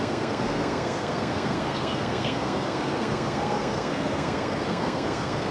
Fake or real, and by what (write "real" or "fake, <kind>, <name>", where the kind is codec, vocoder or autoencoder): fake, codec, SNAC